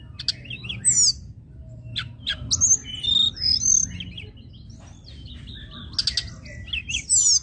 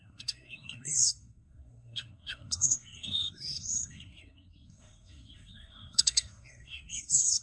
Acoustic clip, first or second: first